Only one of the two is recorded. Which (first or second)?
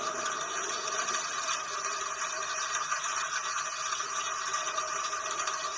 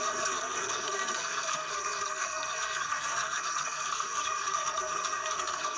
first